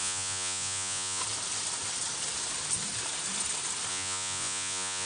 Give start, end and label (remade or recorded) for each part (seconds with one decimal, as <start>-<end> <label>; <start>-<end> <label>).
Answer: 0.0-1.2 remade; 1.2-3.9 recorded; 3.9-5.1 remade